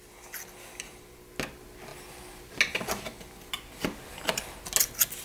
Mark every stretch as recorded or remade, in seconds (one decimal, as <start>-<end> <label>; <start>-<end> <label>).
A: 0.0-5.2 recorded